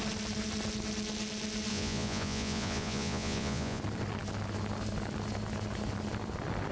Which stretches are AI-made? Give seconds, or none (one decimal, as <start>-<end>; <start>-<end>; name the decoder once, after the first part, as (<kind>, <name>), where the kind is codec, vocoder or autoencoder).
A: 1.7-3.8 (vocoder, Vocos)